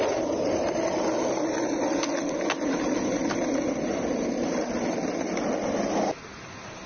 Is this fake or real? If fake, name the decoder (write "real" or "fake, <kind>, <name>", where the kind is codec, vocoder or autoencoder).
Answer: real